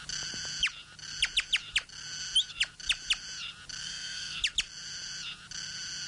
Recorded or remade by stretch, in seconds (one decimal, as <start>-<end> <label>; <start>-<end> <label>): 0.0-3.8 recorded; 3.8-4.4 remade; 4.4-6.1 recorded